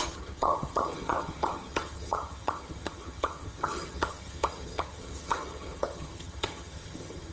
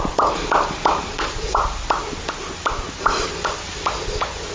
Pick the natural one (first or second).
second